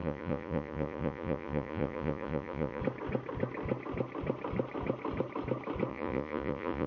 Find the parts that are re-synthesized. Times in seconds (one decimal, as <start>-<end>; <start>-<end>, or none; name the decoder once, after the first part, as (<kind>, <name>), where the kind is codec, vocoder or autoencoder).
0.0-2.8 (vocoder, Vocos); 5.9-6.9